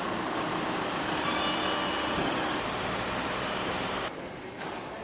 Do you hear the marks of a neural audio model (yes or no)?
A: no